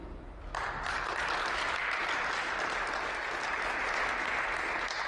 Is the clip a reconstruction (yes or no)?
no